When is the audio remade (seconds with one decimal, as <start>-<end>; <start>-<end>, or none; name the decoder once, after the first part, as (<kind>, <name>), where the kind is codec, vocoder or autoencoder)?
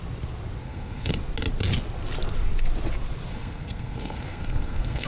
0.6-1.1 (codec, SNAC); 3.3-5.1